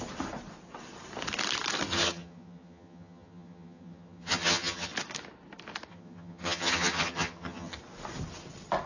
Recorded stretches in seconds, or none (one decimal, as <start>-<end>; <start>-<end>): 0.0-1.9; 4.9-5.9; 7.8-8.9